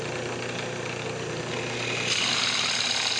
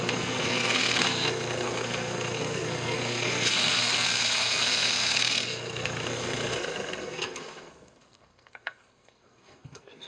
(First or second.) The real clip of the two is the first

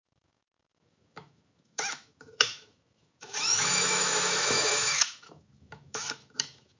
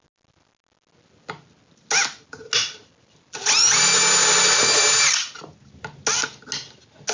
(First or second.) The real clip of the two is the second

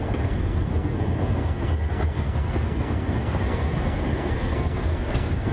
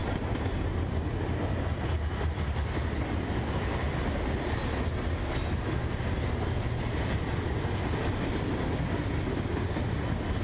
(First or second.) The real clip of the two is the second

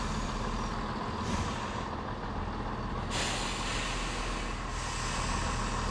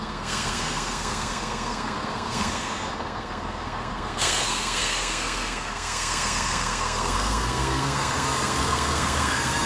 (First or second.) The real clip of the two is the first